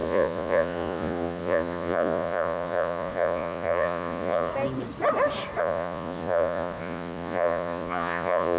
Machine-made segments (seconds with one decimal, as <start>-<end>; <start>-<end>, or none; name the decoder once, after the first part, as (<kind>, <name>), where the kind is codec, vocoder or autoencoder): 0.0-4.5 (vocoder, Vocos); 5.6-8.6